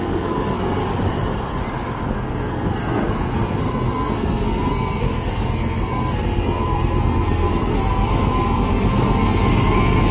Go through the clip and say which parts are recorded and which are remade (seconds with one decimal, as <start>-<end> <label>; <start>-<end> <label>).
0.0-0.8 remade; 0.8-2.1 recorded; 2.1-10.1 remade

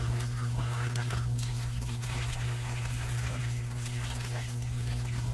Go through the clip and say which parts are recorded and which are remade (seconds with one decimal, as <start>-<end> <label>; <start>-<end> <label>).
0.0-5.3 remade

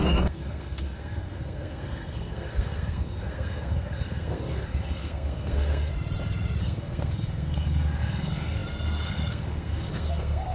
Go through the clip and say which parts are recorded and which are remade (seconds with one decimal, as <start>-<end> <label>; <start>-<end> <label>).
0.0-5.9 remade; 5.9-6.6 recorded; 6.6-10.5 remade

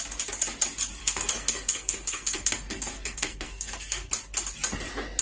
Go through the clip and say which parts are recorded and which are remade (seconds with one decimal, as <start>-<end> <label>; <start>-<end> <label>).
0.0-1.0 recorded; 1.0-4.1 remade; 4.1-5.2 recorded

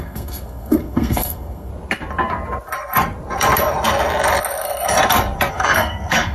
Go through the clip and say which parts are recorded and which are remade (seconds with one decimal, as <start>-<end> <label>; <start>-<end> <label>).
0.0-1.7 remade; 1.7-5.5 recorded; 5.5-6.3 remade